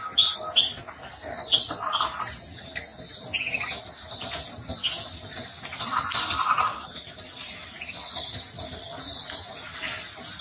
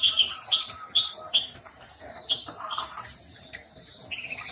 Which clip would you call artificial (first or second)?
second